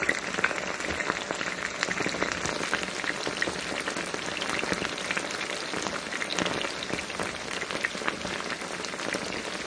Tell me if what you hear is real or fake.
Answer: real